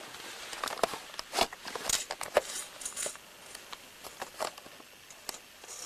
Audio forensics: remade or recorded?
recorded